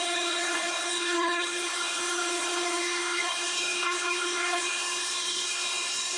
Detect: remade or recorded remade